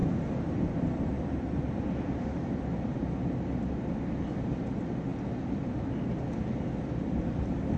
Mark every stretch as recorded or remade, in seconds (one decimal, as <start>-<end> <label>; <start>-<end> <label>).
0.0-3.9 remade; 3.9-5.1 recorded; 5.1-7.2 remade; 7.2-7.8 recorded